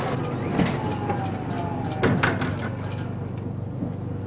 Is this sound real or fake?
real